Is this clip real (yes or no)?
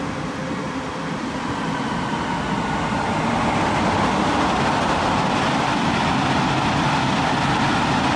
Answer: yes